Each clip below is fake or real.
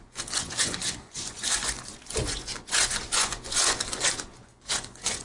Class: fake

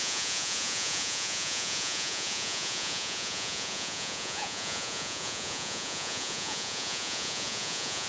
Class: fake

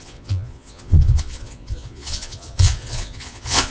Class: fake